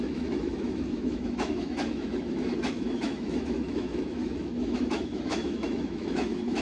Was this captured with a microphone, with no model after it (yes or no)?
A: no